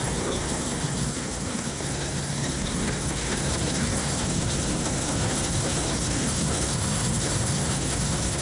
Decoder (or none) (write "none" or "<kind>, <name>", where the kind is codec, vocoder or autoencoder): codec, SNAC